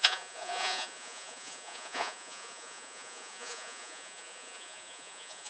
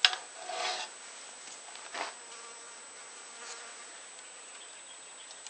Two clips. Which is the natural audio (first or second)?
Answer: second